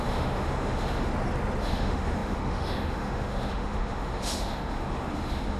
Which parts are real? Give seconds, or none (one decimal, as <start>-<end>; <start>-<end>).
1.1-1.6